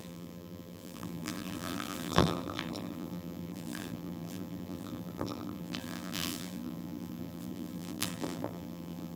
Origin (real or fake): fake